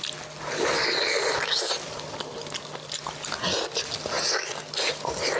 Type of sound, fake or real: real